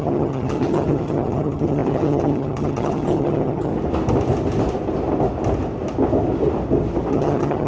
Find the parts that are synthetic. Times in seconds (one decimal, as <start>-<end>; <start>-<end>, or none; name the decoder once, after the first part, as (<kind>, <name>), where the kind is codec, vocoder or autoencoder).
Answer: 0.0-3.7 (vocoder, HiFi-GAN); 7.1-7.7